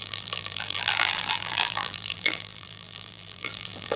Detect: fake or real fake